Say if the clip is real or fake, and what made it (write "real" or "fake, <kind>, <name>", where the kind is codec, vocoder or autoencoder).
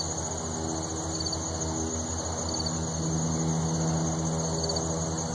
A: real